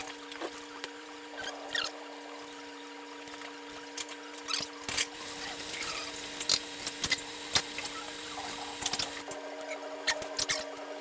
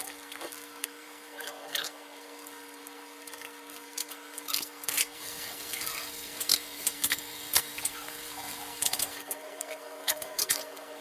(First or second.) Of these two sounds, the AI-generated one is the second